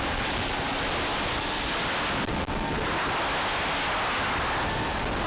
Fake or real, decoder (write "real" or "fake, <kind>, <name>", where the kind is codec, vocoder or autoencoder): real